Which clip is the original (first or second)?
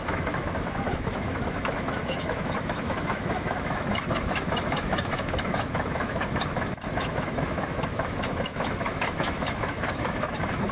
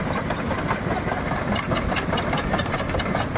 second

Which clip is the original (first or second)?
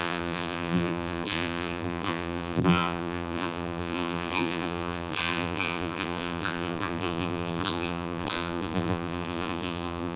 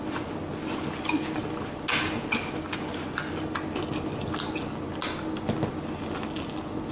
second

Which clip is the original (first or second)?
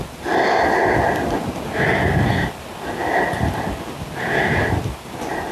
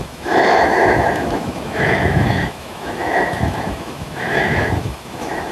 first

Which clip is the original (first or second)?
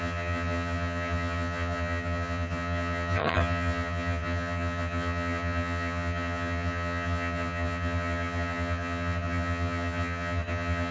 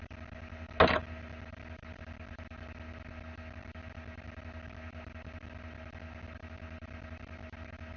second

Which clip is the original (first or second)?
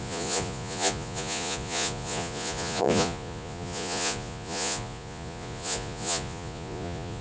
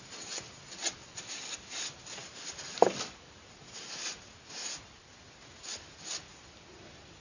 second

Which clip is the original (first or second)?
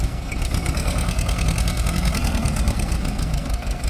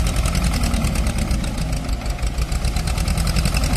second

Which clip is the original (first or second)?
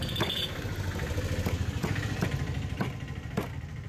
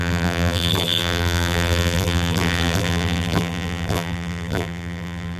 first